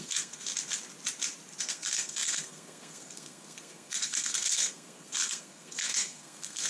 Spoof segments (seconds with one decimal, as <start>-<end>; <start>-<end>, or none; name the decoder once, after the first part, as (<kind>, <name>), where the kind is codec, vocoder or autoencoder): 0.0-0.5 (codec, SNAC); 1.6-6.7